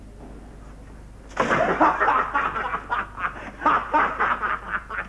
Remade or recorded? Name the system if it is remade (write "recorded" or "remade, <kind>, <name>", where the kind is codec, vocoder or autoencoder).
recorded